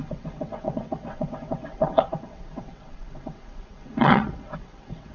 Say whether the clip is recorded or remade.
remade